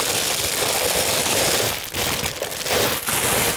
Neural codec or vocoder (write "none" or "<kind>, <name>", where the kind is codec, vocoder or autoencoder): none